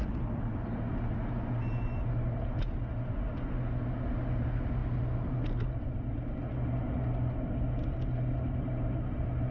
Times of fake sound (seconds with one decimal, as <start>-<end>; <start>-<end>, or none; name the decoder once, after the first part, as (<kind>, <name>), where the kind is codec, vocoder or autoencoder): none